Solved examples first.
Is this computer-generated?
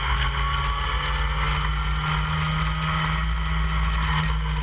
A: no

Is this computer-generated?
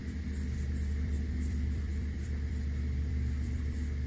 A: yes